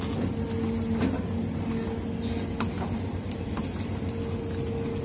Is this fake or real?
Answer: real